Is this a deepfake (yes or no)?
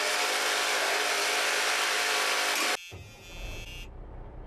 no